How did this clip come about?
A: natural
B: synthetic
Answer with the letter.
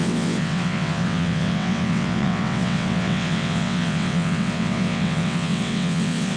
B